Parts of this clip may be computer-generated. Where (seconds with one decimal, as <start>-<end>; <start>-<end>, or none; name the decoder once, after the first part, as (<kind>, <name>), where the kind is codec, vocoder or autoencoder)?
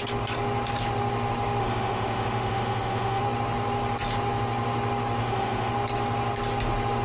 1.6-3.2 (autoencoder, DAC-VAE); 5.2-5.7